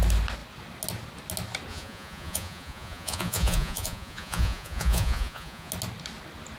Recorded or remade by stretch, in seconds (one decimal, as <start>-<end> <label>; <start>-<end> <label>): 0.0-1.7 recorded; 1.7-5.7 remade; 5.7-6.6 recorded